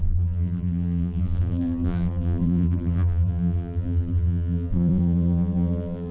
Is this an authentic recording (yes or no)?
no